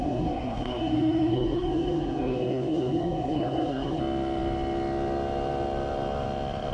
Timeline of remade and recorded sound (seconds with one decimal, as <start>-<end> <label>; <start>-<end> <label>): 0.0-4.0 remade; 4.0-6.7 recorded

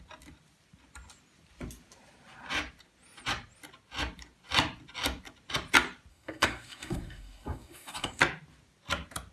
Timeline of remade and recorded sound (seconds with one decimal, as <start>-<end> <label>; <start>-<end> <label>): 0.0-6.1 recorded; 6.1-8.2 remade; 8.2-9.3 recorded

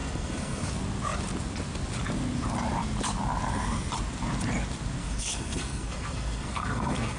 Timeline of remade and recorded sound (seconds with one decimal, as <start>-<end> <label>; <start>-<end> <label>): 0.0-0.7 remade; 0.7-5.0 recorded; 5.0-7.2 remade

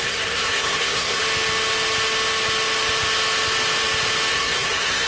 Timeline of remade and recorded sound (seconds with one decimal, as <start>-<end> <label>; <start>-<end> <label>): 0.0-1.2 remade; 1.2-4.3 recorded; 4.3-5.1 remade

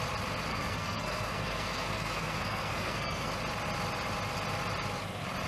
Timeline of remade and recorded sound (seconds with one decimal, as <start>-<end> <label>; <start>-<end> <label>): 0.0-0.5 recorded; 0.5-3.3 remade; 3.3-5.5 recorded

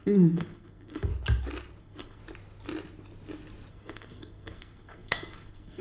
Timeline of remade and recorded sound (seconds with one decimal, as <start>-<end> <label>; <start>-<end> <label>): 0.0-1.1 remade; 1.1-1.8 recorded; 1.8-2.2 remade; 2.2-3.7 recorded; 3.7-5.8 remade

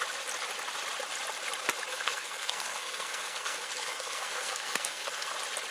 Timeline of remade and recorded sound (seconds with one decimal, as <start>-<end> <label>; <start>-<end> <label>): 0.0-1.9 recorded; 1.9-5.3 remade; 5.3-5.7 recorded